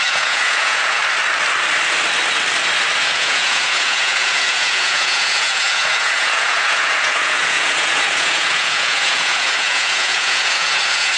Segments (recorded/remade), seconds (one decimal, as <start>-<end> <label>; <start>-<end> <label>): 0.0-1.0 remade; 1.0-3.0 recorded; 3.0-11.2 remade